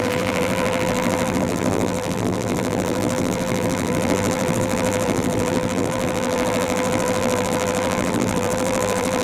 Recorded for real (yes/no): no